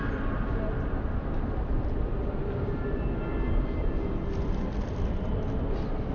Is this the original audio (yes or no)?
yes